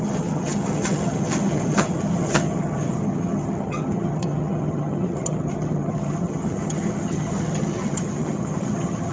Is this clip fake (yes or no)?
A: yes